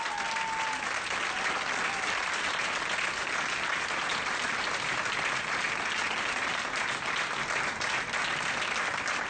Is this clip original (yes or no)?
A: yes